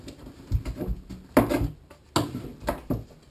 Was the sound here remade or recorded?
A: recorded